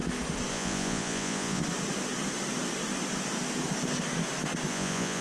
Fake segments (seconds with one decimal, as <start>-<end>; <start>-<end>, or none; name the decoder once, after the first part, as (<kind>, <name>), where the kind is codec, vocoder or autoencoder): 0.5-1.6 (vocoder, Vocos); 4.7-5.2